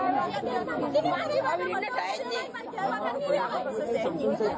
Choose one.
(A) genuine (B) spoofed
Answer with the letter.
A